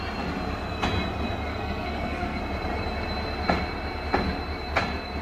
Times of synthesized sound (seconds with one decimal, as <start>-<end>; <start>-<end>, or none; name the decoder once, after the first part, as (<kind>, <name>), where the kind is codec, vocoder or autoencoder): 1.5-2.4 (codec, SNAC)